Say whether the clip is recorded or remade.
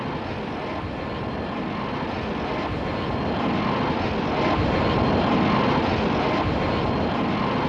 recorded